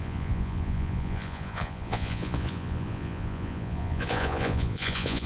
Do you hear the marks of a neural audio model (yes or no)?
yes